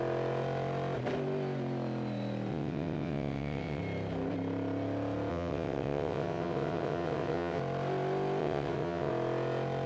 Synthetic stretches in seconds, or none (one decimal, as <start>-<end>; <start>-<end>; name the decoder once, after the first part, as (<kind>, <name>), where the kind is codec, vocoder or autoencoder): 2.5-3.8 (vocoder, WaveNeXt); 5.3-7.6; 8.4-9.1